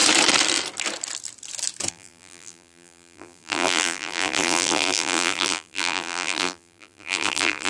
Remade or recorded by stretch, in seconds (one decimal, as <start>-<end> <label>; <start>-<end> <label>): 0.0-1.9 recorded; 1.9-7.7 remade